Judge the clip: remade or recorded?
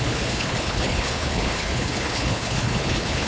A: remade